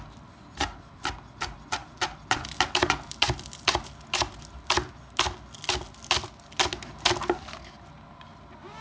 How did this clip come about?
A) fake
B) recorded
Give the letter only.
A